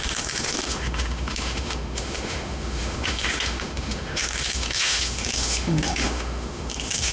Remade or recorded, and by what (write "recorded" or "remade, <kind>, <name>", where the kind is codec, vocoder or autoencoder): remade, autoencoder, DAC-VAE